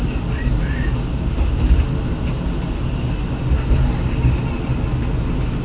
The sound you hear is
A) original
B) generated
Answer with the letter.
A